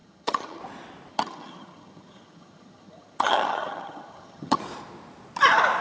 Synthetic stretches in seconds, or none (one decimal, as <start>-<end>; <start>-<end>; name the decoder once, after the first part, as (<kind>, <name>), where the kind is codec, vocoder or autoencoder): 0.0-0.6 (vocoder, HiFi-GAN); 1.1-4.6